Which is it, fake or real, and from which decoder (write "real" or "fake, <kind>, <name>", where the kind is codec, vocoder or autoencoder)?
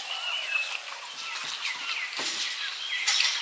real